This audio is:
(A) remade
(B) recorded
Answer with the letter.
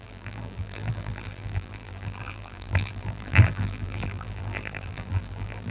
A